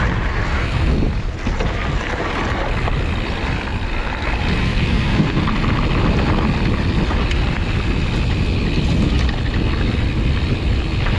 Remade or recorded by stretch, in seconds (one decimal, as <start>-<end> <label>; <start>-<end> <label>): 0.0-0.5 recorded; 0.5-1.1 remade; 1.1-4.6 recorded; 4.6-5.4 remade; 5.4-11.2 recorded